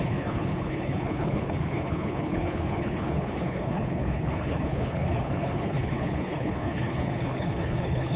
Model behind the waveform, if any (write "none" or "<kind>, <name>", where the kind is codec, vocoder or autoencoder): codec, HILCodec